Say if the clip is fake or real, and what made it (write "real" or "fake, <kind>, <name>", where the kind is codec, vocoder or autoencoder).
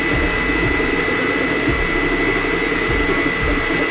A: real